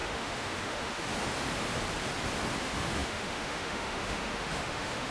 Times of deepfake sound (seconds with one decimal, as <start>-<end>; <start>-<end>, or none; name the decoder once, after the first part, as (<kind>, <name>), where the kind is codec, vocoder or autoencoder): 0.0-1.1 (autoencoder, DAC-VAE); 2.6-5.1